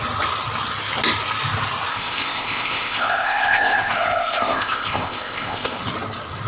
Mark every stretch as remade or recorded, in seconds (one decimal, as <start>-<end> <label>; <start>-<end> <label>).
0.0-1.9 recorded; 1.9-5.8 remade; 5.8-6.5 recorded